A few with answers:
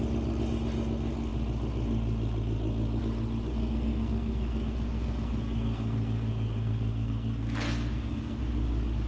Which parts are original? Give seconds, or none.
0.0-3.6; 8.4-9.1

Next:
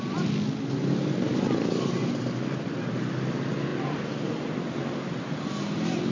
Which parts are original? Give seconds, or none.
0.0-6.1

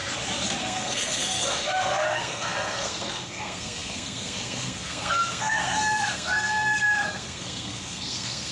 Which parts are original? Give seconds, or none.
0.0-0.6